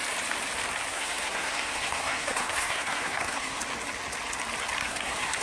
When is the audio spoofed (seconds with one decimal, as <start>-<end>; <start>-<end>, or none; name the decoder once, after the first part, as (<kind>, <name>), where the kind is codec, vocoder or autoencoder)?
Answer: 0.9-3.6 (codec, SNAC); 4.8-5.4